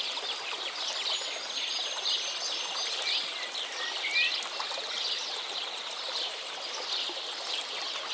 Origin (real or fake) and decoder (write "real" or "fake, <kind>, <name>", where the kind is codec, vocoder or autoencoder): real